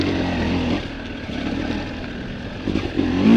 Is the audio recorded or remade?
recorded